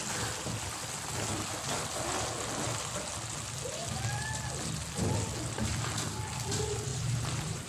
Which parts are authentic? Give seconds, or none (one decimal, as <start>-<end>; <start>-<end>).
0.0-6.9